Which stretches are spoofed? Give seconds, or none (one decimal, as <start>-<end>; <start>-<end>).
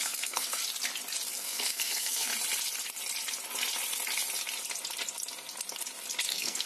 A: 0.0-0.6; 1.3-2.3; 6.3-6.7